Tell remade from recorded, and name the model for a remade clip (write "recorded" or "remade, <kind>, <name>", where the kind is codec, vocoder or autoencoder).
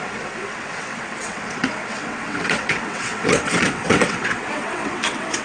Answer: remade, vocoder, WaveNeXt